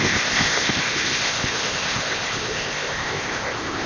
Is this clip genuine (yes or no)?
no